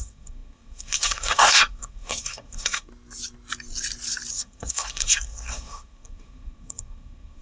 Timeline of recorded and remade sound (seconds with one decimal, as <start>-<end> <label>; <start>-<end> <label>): 0.0-2.9 remade; 2.9-4.3 recorded; 4.3-7.4 remade